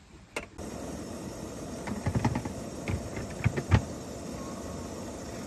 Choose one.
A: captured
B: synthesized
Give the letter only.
A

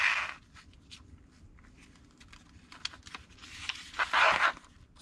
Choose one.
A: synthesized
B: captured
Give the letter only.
B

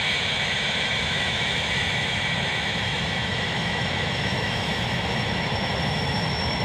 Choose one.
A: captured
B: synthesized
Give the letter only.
B